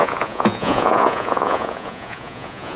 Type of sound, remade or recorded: remade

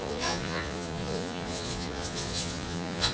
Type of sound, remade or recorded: remade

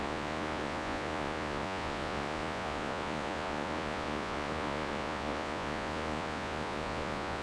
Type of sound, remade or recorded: remade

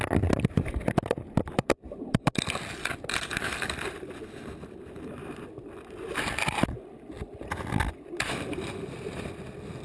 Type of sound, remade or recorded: recorded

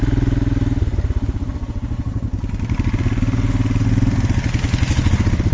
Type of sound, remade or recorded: recorded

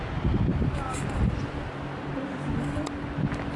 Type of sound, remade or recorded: recorded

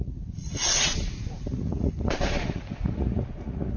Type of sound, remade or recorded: remade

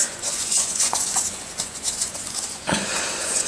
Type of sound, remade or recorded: remade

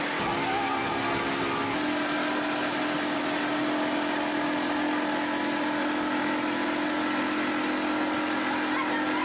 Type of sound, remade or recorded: recorded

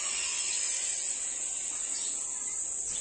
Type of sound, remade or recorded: remade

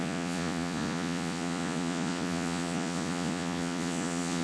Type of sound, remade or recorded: remade